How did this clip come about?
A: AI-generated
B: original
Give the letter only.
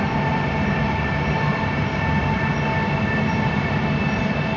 B